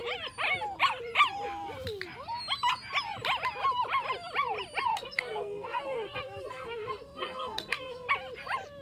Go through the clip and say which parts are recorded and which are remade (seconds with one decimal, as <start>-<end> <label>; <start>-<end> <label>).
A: 0.0-4.9 recorded; 4.9-8.1 remade; 8.1-8.8 recorded